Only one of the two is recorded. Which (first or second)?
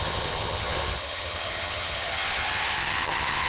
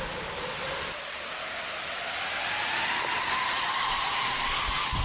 second